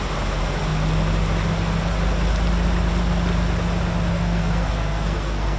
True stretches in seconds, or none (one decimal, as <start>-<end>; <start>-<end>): 0.0-4.1